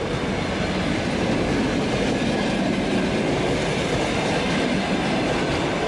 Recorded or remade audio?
recorded